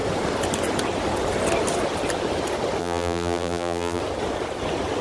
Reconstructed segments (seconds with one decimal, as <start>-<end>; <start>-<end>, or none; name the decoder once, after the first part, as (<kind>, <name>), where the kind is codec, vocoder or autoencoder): 2.8-4.0 (vocoder, BigVGAN v2)